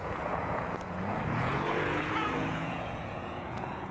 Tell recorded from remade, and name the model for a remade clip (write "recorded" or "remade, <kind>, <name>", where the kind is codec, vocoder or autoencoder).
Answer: remade, vocoder, Vocos